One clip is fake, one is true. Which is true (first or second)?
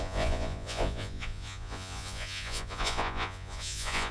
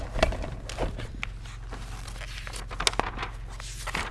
second